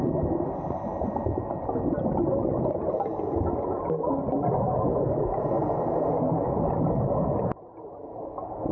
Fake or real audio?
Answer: real